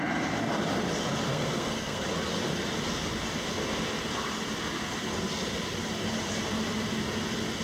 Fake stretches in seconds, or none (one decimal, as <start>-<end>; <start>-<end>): 1.3-2.0